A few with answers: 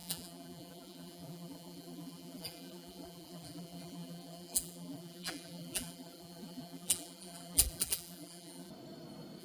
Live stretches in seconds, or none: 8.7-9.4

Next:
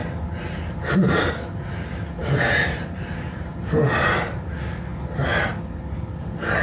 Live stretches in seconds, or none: 1.3-2.2; 4.5-6.6

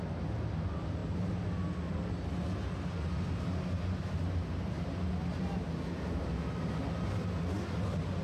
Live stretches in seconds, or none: 0.0-5.2; 7.2-8.2

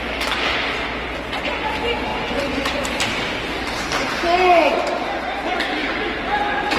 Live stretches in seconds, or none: 0.0-2.1; 4.1-5.8

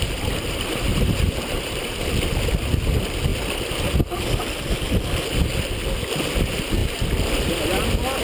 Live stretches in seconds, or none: 0.0-0.9; 1.8-8.2

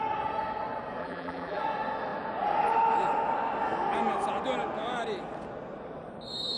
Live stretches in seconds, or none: 0.0-1.0; 1.6-6.6

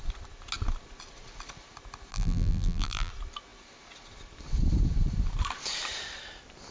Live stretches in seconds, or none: 0.0-2.1; 3.1-6.7